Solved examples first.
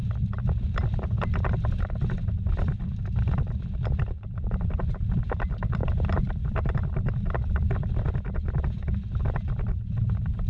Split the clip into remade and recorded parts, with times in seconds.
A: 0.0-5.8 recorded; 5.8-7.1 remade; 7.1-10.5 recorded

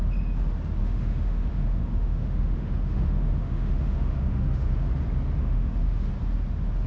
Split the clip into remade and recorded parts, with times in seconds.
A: 0.0-0.8 recorded; 0.8-4.9 remade; 4.9-5.4 recorded; 5.4-6.1 remade; 6.1-6.9 recorded

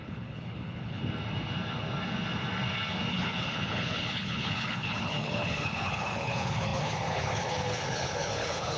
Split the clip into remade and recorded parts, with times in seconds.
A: 0.0-1.0 remade; 1.0-3.1 recorded; 3.1-8.8 remade